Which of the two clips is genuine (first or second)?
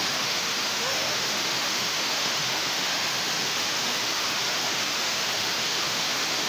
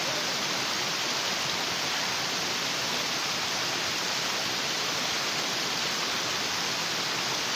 second